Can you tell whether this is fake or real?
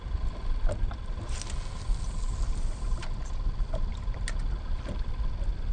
real